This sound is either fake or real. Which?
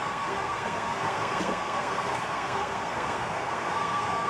fake